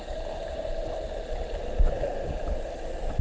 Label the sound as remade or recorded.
recorded